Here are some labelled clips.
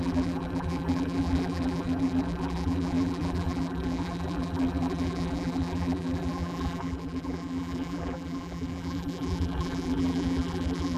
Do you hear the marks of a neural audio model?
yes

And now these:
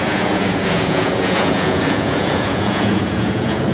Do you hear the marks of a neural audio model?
yes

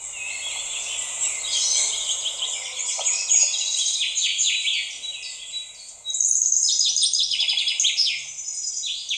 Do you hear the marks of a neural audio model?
no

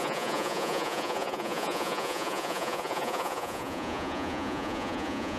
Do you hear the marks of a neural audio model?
yes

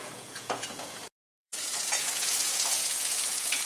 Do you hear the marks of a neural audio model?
yes